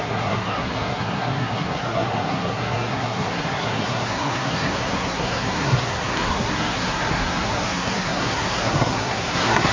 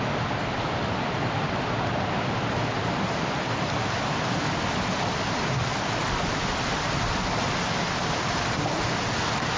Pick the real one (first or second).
second